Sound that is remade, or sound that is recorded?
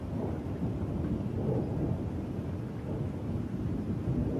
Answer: recorded